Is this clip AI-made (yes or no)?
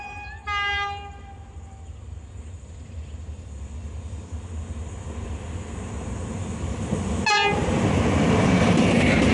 no